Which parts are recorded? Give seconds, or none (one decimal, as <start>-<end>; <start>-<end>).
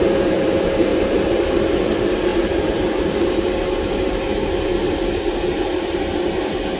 none